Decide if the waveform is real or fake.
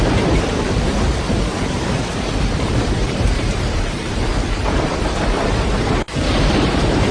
fake